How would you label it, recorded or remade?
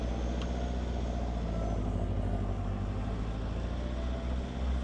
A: recorded